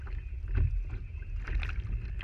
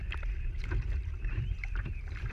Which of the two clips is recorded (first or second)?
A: first